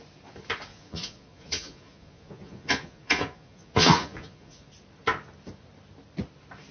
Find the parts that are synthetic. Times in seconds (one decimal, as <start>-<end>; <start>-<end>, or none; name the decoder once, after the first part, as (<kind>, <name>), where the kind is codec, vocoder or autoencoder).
0.7-4.7 (vocoder, Vocos)